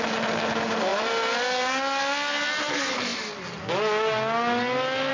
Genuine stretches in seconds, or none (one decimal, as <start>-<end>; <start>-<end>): 0.0-5.1